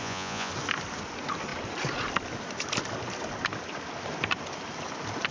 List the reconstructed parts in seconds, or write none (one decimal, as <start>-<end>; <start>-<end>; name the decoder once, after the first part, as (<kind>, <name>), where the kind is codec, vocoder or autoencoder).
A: 0.0-0.5 (vocoder, Vocos)